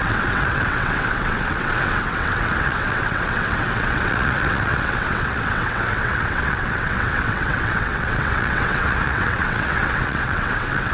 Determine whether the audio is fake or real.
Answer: fake